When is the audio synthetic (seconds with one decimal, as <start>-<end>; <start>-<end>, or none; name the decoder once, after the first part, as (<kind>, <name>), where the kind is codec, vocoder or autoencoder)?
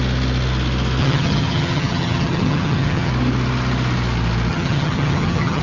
1.0-3.1 (vocoder, HiFi-GAN); 4.5-5.6